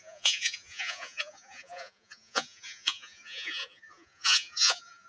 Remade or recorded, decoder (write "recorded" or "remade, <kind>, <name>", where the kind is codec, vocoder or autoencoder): remade, vocoder, Vocos